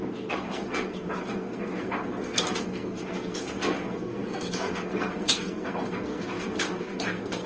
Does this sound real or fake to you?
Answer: fake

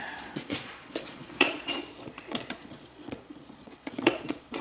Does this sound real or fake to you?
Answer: fake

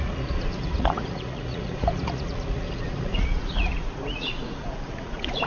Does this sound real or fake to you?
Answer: fake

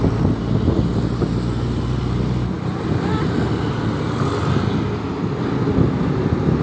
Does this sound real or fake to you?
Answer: real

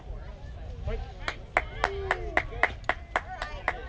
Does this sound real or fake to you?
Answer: real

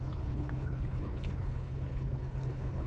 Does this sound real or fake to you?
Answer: fake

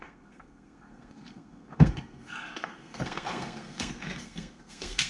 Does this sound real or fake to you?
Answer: fake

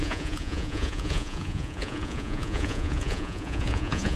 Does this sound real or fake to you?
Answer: fake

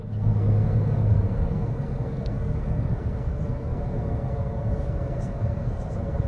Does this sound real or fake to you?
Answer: fake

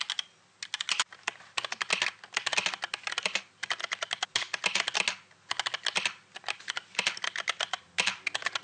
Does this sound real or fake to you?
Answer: real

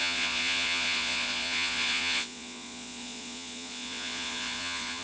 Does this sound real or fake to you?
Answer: fake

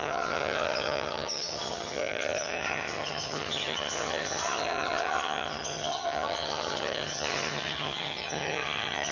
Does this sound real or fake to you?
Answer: fake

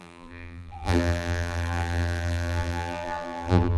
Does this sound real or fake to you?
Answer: fake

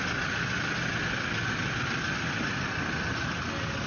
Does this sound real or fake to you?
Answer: real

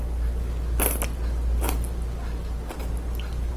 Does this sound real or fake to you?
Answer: real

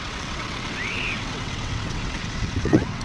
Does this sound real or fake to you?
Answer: fake